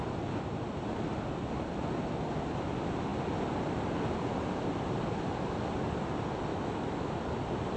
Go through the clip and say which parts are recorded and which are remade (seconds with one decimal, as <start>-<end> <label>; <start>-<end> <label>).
0.0-6.5 recorded; 6.5-7.1 remade; 7.1-7.8 recorded